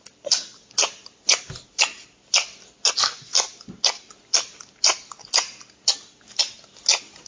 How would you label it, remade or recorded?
recorded